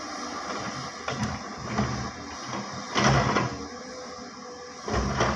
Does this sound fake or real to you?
real